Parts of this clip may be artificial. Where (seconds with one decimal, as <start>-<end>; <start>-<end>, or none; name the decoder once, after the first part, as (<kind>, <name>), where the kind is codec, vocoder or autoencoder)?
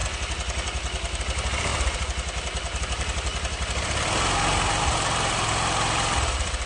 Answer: 1.2-1.7 (vocoder, BigVGAN v2); 2.8-3.3; 4.8-6.7